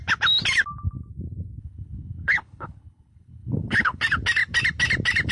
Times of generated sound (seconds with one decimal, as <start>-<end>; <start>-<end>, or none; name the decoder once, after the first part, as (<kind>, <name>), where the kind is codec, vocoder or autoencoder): 1.6-4.0 (codec, HILCodec)